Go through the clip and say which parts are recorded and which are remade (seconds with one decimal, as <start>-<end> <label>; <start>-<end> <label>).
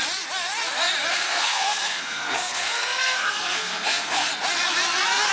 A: 0.0-1.1 recorded; 1.1-4.3 remade; 4.3-5.3 recorded